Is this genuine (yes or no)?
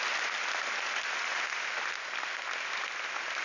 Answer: yes